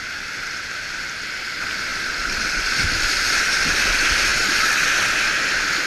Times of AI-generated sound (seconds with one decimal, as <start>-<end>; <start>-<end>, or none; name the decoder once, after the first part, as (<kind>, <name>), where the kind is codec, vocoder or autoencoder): none